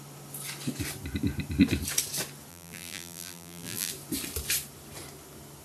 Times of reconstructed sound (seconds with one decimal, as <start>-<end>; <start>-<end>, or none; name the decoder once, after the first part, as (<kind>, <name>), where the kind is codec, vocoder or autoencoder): 2.5-3.9 (vocoder, BigVGAN v2)